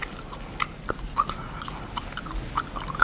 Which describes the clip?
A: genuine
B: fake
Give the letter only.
A